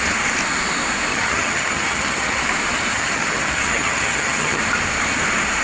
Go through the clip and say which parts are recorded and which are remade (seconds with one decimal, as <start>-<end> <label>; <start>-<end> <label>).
0.0-1.1 recorded; 1.1-2.4 remade; 2.4-2.9 recorded; 2.9-4.6 remade; 4.6-5.6 recorded